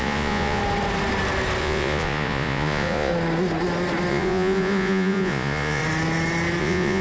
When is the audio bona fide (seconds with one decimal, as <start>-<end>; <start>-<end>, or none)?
0.6-1.6; 3.1-4.1; 5.8-6.6